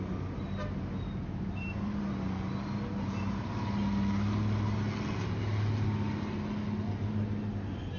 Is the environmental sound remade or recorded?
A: recorded